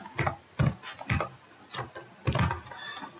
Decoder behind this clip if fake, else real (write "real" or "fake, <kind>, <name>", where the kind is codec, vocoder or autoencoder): real